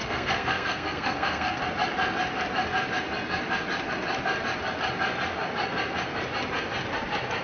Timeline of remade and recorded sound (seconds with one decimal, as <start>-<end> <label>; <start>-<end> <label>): 0.0-1.6 remade; 1.6-7.4 recorded